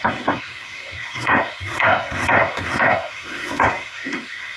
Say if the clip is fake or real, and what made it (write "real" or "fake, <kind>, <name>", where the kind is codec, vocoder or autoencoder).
fake, codec, SNAC